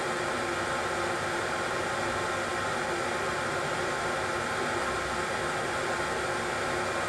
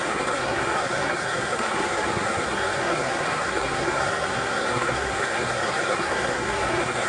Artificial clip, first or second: second